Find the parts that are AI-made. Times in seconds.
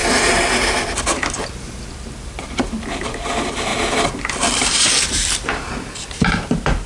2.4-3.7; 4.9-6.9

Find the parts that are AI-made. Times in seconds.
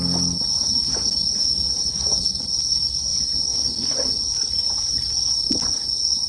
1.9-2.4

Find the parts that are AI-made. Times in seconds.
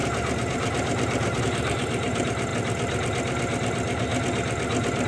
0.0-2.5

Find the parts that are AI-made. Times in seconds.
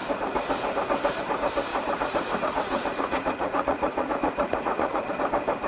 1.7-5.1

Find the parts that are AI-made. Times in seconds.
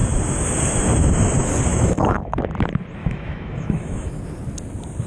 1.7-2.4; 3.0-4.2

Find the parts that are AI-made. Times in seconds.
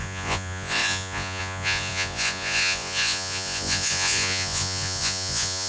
0.0-5.7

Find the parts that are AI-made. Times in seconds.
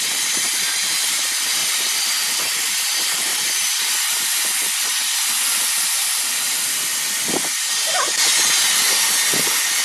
none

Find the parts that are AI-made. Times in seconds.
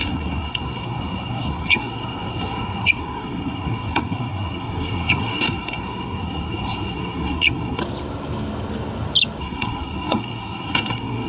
0.0-7.8; 9.4-11.3